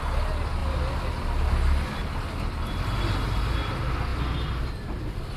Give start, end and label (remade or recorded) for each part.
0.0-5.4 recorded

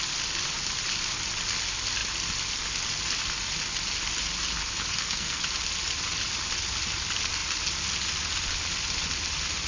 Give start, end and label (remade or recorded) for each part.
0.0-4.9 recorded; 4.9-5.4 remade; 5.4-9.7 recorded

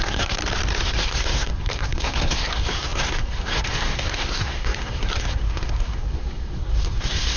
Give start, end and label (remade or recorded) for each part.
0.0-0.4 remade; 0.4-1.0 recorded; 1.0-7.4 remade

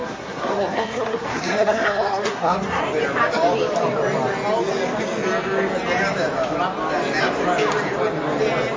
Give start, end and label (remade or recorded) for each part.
0.0-2.8 remade; 2.8-8.8 recorded

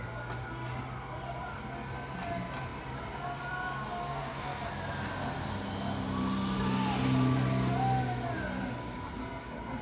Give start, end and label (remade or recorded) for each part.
0.0-4.1 recorded; 4.1-4.7 remade; 4.7-9.8 recorded